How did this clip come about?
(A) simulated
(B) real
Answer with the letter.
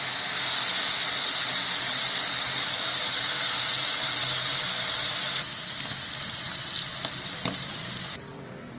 B